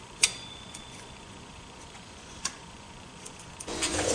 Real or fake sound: fake